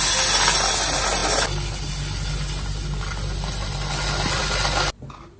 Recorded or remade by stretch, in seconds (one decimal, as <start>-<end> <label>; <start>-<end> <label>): 0.0-5.4 recorded